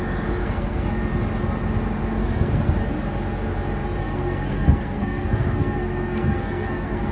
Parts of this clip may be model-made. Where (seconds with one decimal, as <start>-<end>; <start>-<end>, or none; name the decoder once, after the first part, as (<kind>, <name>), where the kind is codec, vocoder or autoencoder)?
0.4-0.9 (codec, SNAC); 2.2-2.8; 4.0-7.1

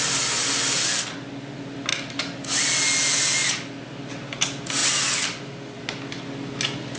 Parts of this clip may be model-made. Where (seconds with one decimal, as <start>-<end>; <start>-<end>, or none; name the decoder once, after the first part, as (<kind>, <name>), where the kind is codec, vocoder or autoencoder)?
none

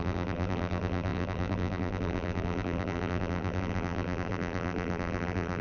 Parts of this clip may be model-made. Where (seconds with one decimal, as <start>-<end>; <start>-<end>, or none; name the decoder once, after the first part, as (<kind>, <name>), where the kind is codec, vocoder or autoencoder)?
0.0-5.6 (vocoder, BigVGAN v2)

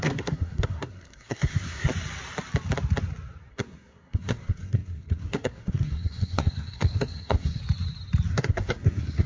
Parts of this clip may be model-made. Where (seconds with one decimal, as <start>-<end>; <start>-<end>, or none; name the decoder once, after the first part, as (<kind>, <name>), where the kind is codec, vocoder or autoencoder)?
0.0-1.9 (codec, SNAC); 3.5-7.6; 8.3-9.3

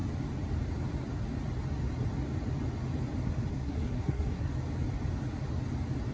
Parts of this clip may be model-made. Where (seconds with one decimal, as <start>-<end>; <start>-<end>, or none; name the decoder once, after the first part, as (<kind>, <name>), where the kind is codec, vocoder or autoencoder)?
3.5-4.5 (codec, SNAC)

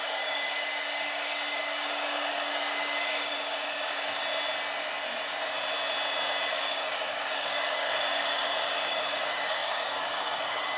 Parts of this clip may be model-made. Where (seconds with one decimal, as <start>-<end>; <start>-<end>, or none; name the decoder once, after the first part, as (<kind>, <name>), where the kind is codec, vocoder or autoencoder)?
0.0-4.2 (codec, DAC); 6.5-10.8

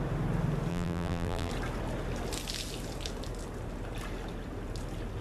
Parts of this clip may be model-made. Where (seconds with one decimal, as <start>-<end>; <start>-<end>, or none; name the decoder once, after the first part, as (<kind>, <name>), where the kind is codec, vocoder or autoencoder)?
0.7-1.5 (vocoder, BigVGAN v2)

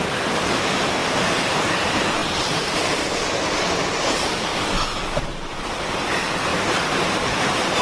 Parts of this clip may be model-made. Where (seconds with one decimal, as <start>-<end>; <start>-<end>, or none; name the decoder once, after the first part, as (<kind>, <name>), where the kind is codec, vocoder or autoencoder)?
0.0-1.0 (vocoder, BigVGAN v2); 1.6-4.5; 5.2-7.8